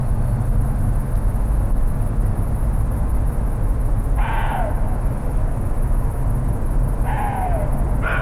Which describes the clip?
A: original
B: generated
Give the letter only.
A